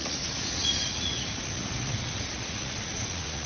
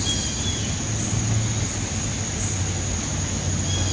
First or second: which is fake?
first